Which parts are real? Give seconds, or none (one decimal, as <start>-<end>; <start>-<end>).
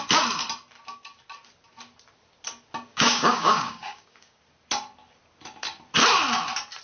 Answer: 0.0-2.9; 4.4-6.8